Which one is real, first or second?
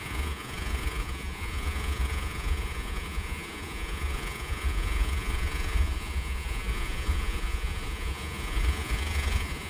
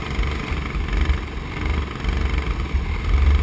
second